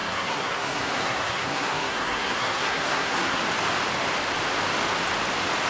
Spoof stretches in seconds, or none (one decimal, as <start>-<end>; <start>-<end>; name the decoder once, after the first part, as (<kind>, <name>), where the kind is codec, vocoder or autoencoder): 0.0-3.4 (codec, SNAC)